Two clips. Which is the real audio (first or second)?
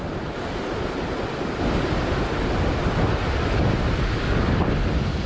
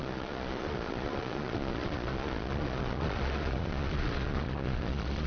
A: first